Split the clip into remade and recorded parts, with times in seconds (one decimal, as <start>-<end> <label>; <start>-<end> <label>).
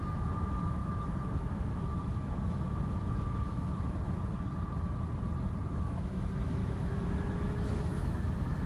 0.0-4.2 remade; 4.2-5.7 recorded; 5.7-8.7 remade